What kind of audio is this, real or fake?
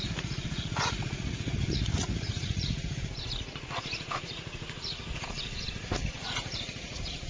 fake